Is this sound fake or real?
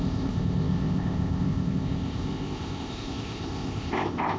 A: fake